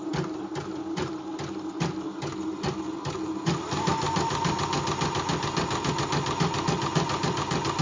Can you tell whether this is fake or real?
real